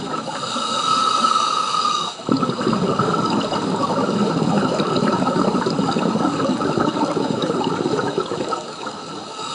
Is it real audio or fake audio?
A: fake